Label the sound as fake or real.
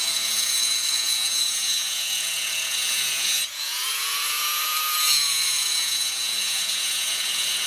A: fake